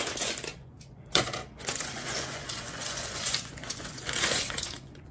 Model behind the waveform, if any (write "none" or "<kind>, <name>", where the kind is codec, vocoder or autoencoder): vocoder, Vocos